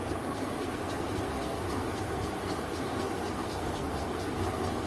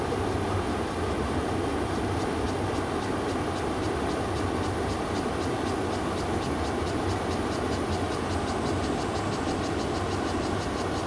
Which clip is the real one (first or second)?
second